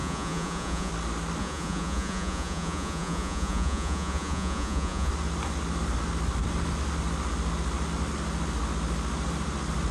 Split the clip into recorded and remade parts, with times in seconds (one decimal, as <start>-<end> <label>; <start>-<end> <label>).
0.0-0.9 remade; 0.9-1.4 recorded; 1.4-5.1 remade; 5.1-9.9 recorded